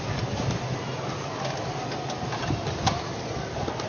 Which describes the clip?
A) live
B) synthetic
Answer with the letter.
A